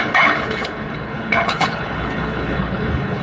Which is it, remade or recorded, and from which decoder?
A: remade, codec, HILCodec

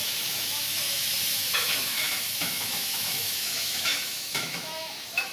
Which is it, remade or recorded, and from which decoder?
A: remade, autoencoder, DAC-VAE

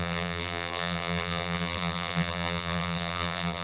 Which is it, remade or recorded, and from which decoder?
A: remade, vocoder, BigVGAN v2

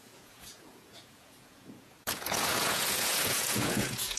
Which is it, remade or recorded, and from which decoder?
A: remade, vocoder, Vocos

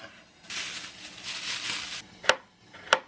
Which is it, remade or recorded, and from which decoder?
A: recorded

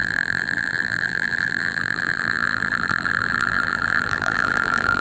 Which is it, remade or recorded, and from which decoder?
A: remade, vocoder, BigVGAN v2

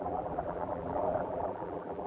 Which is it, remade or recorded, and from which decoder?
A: remade, vocoder, BigVGAN v2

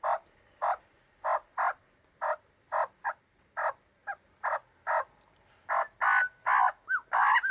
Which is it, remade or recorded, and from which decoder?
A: recorded